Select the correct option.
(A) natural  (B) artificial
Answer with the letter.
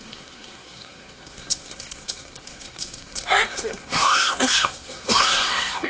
B